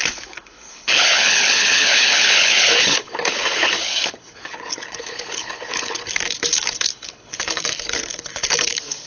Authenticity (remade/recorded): remade